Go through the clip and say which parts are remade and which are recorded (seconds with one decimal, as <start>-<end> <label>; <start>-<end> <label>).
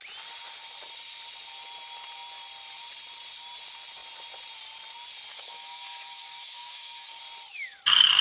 0.0-5.3 recorded; 5.3-7.2 remade; 7.2-8.2 recorded